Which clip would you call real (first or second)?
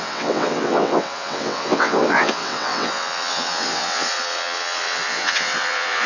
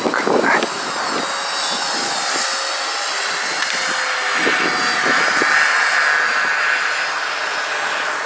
second